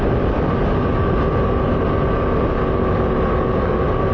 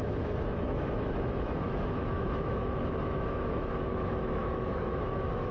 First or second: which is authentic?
first